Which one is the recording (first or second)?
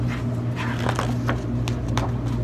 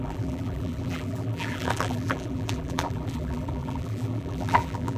first